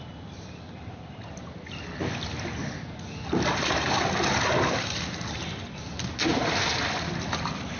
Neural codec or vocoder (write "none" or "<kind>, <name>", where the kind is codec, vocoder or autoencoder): none